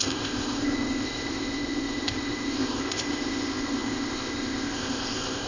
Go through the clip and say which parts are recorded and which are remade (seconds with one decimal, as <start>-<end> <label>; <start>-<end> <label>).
0.0-5.5 remade